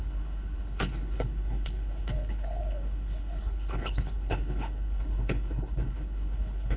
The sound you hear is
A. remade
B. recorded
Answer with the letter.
A